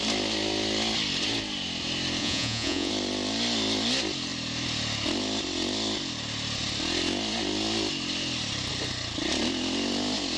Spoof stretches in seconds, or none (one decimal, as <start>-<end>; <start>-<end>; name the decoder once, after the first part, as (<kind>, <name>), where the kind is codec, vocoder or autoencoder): 2.2-2.9 (vocoder, Vocos)